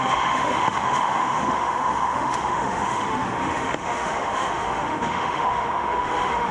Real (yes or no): no